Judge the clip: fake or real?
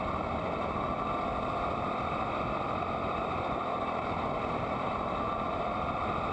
fake